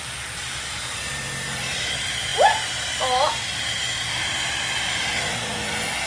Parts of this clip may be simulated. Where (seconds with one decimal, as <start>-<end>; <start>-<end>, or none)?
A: none